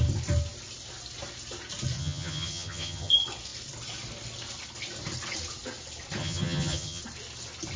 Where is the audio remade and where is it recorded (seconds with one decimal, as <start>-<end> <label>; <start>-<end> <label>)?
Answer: 0.0-2.0 recorded; 2.0-3.1 remade; 3.1-6.2 recorded; 6.2-7.0 remade; 7.0-7.8 recorded